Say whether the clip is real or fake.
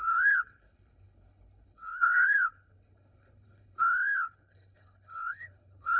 fake